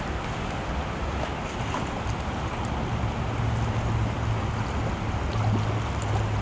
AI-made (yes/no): no